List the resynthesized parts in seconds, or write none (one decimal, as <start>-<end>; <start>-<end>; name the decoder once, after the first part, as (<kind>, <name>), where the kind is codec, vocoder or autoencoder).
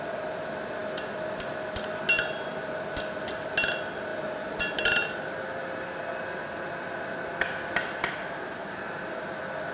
none